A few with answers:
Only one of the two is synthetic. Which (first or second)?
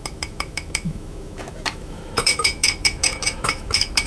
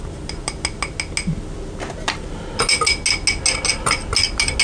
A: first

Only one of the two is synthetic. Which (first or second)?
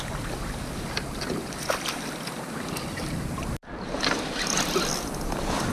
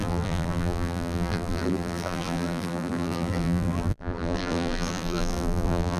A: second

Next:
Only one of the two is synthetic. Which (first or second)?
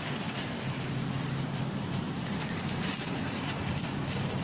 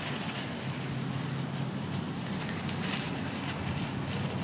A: first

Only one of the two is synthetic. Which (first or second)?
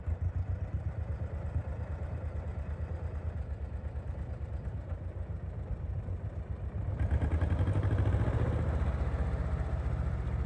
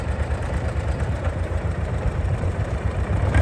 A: second